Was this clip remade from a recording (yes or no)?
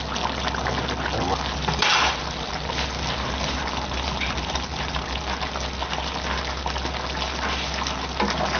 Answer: no